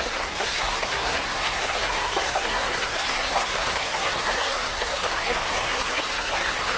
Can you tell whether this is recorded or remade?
remade